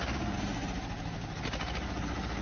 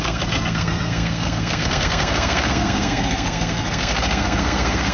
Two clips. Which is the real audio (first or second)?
first